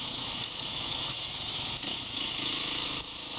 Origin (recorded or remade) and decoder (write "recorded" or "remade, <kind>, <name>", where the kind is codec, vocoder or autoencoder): remade, autoencoder, DAC-VAE